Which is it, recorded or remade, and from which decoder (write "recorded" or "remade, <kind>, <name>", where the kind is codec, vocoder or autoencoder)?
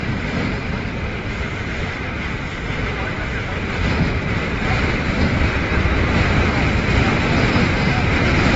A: remade, vocoder, BigVGAN v2